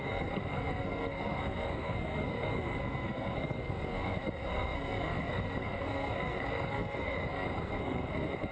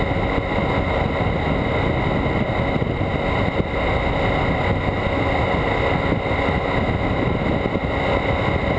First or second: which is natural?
second